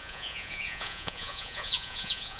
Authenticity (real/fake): fake